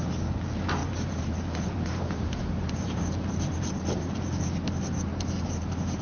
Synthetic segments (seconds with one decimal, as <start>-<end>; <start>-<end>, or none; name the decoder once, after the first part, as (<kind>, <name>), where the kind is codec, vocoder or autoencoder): 0.8-4.4 (vocoder, BigVGAN v2); 5.1-6.0